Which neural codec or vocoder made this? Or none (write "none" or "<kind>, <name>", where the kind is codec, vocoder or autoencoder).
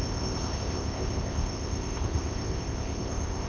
codec, ZipCodec